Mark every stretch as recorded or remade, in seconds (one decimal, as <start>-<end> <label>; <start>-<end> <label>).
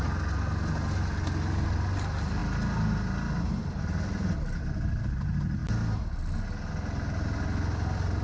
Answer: 0.0-8.2 recorded